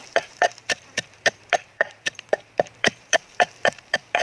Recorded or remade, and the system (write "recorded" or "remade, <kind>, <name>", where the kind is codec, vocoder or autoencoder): remade, vocoder, BigVGAN v2